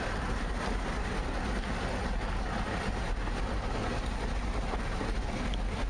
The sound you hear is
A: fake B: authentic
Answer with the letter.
B